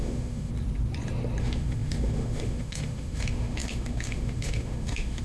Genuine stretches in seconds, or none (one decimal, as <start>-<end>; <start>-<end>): 0.5-1.4